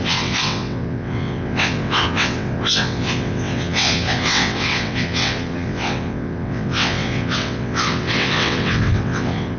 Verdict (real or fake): fake